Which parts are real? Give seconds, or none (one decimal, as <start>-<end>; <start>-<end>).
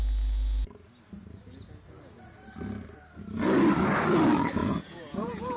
0.0-4.6